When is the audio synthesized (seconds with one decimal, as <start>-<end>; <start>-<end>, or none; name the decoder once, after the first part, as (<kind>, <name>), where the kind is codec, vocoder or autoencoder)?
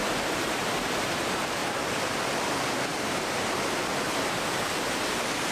none